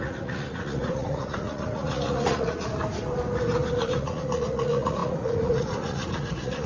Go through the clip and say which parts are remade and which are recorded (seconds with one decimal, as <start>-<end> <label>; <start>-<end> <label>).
0.0-2.7 remade; 2.7-3.8 recorded; 3.8-6.7 remade